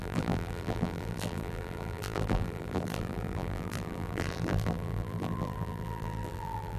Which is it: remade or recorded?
remade